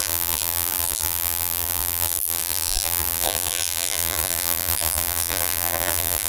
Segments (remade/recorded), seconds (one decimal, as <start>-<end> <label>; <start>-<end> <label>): 0.0-6.3 remade